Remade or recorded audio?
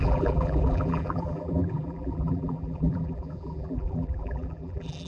remade